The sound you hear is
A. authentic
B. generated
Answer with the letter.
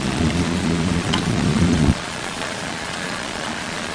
B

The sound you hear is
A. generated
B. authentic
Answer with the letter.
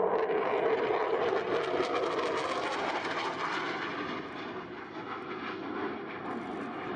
B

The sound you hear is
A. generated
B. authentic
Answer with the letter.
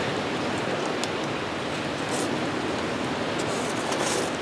B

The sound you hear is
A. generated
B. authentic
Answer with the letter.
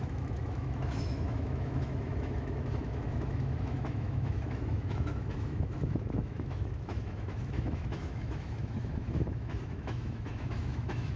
A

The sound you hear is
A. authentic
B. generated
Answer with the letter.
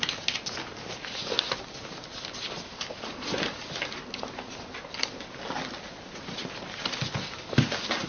A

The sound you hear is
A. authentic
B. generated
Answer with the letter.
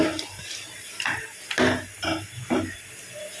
A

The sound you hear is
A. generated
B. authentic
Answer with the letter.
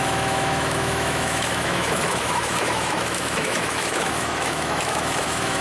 A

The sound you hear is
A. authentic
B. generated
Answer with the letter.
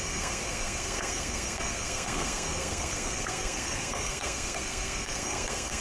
B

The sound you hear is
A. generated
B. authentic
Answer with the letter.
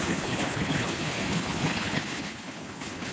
A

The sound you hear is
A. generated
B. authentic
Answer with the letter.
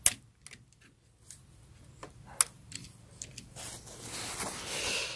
B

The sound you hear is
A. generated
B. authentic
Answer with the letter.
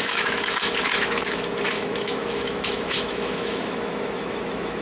A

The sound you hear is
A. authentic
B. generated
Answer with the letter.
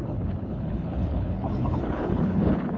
B